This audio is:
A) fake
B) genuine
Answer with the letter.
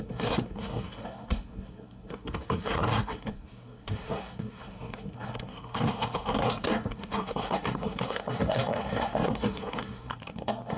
A